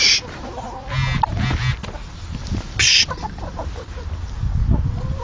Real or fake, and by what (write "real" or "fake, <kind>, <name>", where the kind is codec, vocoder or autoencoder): real